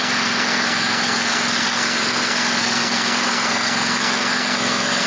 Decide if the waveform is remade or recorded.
remade